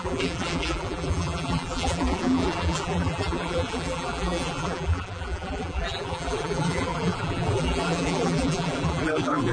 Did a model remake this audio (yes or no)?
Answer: yes